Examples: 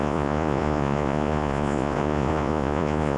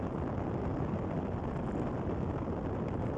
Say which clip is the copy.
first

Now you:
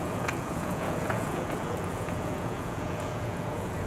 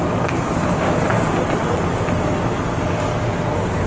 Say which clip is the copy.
first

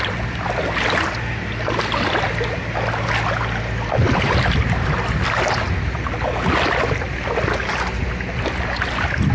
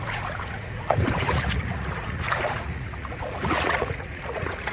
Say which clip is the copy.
second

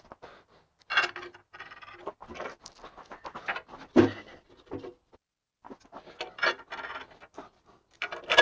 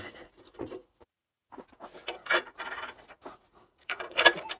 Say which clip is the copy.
second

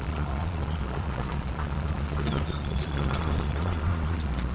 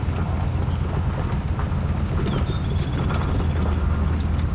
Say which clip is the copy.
first